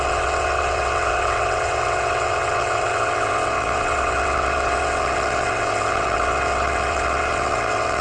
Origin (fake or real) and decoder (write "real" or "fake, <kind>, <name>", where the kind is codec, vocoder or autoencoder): fake, vocoder, WaveNeXt